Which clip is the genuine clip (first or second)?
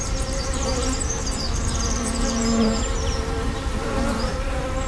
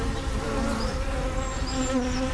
second